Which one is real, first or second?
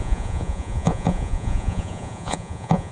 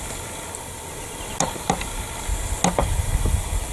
second